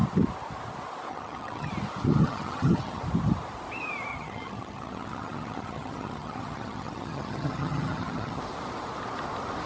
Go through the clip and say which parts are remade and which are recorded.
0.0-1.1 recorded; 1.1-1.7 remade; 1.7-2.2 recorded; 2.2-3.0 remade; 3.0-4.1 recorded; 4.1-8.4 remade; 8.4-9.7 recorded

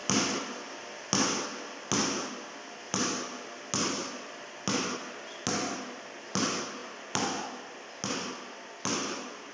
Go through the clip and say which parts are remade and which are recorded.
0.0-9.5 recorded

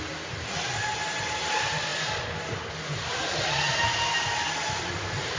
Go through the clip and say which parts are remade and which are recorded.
0.0-5.4 recorded